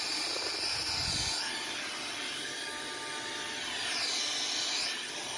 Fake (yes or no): no